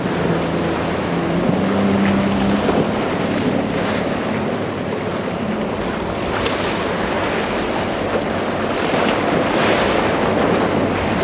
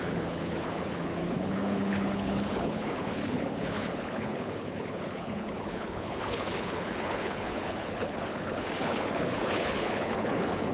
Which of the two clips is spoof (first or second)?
second